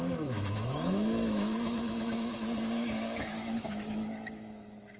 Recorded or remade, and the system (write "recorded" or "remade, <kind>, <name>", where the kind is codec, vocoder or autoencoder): remade, autoencoder, DAC-VAE